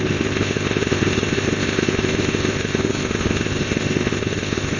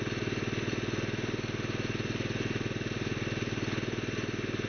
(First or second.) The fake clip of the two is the first